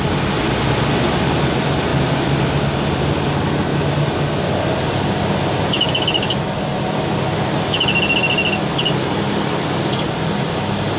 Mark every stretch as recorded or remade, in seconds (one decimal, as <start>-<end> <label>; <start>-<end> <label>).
0.0-11.0 recorded